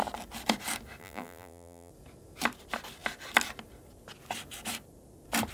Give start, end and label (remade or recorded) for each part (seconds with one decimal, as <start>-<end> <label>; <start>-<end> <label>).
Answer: 0.0-1.0 recorded; 1.0-1.9 remade; 1.9-5.5 recorded